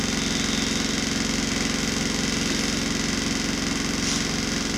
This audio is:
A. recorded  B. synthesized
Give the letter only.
A